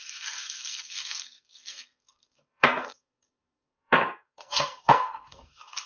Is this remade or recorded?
remade